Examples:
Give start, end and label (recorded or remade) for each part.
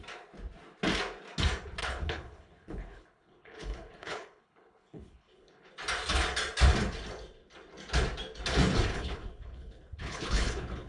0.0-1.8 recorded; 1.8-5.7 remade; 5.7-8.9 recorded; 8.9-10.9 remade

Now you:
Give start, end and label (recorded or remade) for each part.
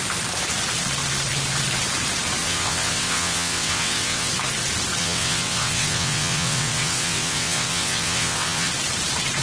0.0-2.4 recorded; 2.4-4.3 remade; 4.3-5.0 recorded; 5.0-8.7 remade; 8.7-9.4 recorded